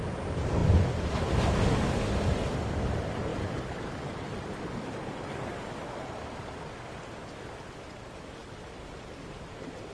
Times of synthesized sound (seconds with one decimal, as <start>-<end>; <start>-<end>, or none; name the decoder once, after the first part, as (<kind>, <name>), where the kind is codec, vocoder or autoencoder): none